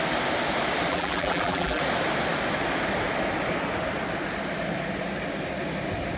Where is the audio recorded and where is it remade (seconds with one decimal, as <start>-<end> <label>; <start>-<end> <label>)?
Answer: 0.0-0.9 recorded; 0.9-1.8 remade; 1.8-6.2 recorded